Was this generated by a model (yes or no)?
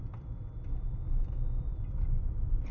yes